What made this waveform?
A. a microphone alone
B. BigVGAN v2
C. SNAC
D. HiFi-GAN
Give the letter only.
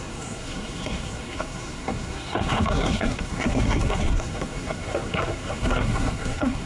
C